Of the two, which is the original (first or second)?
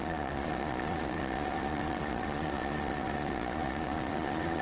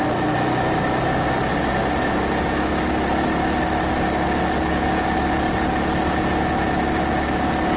second